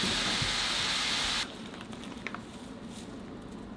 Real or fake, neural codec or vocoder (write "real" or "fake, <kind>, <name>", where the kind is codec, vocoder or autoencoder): real